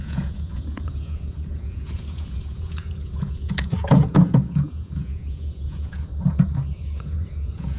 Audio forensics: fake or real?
fake